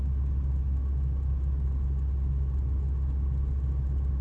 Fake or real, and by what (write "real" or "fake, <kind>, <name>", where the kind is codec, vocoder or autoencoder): real